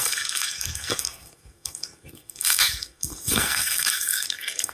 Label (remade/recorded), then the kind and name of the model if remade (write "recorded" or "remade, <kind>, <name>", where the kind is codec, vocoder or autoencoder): remade, codec, SNAC